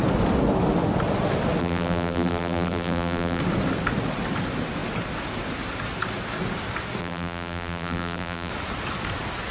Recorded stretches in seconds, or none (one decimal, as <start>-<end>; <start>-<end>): 0.0-1.6; 3.4-7.0; 8.5-9.5